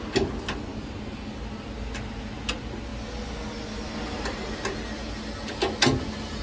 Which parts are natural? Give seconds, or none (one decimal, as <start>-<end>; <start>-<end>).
0.0-6.4